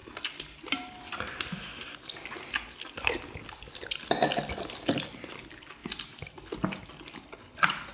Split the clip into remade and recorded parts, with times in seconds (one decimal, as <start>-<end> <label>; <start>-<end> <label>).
0.0-7.9 recorded